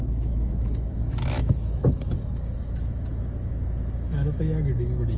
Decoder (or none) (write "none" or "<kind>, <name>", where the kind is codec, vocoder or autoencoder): autoencoder, DAC-VAE